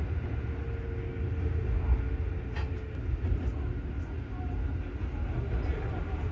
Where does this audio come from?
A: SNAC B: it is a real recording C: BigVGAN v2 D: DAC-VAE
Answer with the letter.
B